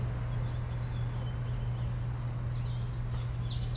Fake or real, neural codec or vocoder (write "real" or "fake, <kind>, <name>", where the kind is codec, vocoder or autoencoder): real